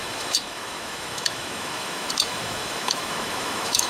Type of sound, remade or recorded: remade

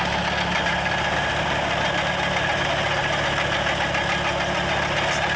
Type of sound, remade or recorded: recorded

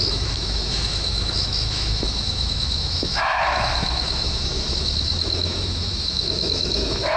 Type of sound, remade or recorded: remade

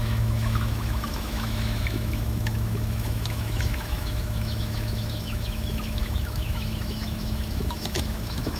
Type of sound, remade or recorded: remade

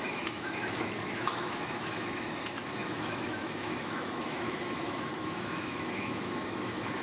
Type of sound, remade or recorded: remade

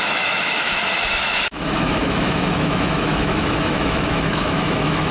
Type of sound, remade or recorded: remade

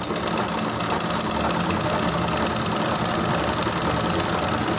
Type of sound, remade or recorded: recorded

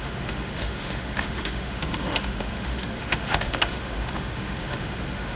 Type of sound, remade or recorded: remade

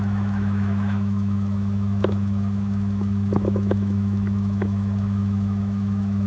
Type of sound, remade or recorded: remade